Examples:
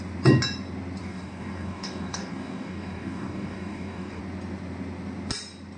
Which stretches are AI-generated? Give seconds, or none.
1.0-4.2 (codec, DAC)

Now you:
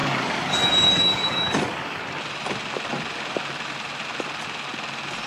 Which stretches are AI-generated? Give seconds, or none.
0.0-2.0 (codec, DAC)

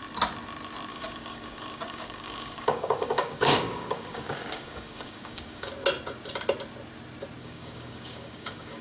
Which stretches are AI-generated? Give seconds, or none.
0.9-5.7 (codec, DAC); 7.4-8.8

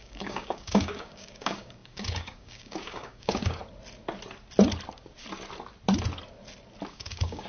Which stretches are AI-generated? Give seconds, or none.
0.0-3.6 (codec, DAC); 6.9-7.5

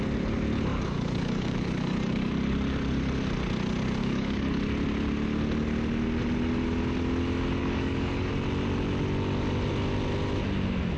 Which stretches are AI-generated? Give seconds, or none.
0.7-2.3 (codec, DAC); 4.0-4.6; 7.6-8.3